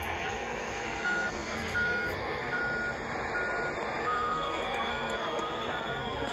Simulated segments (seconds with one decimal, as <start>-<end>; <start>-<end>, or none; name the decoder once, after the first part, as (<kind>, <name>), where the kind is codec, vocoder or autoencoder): 0.0-2.6 (codec, SNAC); 4.0-6.3

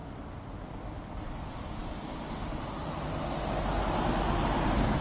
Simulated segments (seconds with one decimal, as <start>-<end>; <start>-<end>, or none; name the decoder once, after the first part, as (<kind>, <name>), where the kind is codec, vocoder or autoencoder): none

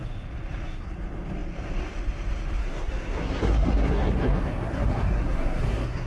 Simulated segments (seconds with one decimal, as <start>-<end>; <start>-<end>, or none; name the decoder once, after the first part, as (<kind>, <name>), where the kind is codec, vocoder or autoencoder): 2.6-6.1 (codec, SNAC)

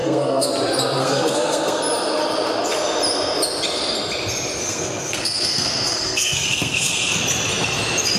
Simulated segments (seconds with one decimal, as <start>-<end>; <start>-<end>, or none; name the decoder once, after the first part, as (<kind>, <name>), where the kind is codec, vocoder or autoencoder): 0.0-0.5 (codec, SNAC); 1.0-1.8; 4.6-7.2